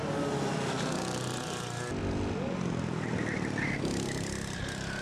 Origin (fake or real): real